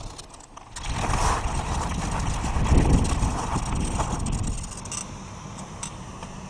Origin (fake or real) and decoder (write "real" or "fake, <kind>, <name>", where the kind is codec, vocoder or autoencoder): real